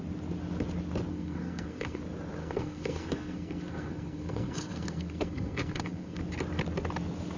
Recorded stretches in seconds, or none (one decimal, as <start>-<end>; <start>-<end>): 0.0-1.1; 2.0-2.4; 6.2-7.4